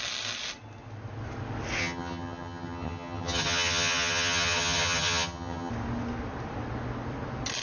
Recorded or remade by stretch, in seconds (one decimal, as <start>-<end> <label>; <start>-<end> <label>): 0.0-1.8 recorded; 1.8-5.7 remade; 5.7-7.6 recorded